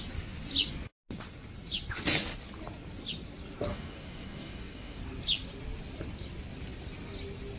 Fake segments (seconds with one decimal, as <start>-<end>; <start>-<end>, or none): 3.7-5.0